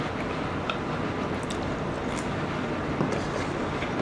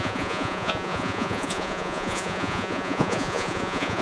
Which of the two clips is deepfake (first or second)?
second